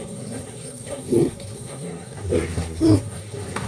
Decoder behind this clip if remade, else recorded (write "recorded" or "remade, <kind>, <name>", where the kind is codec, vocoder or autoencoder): remade, codec, SNAC